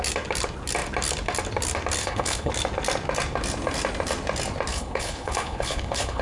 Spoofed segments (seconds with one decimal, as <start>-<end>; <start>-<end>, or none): 2.0-2.5; 4.7-6.2